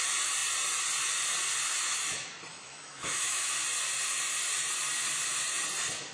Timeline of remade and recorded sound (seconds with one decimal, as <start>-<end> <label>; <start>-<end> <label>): 0.0-2.5 recorded; 2.5-3.5 remade; 3.5-6.1 recorded